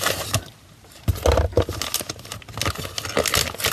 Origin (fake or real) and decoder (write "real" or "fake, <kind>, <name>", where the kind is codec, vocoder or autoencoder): real